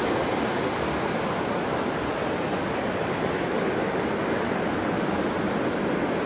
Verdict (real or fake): real